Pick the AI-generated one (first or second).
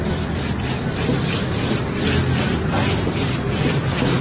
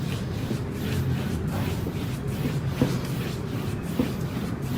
second